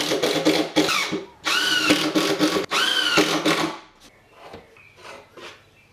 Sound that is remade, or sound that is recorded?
recorded